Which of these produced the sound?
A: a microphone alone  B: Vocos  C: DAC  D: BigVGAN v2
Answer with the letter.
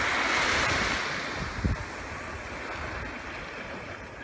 A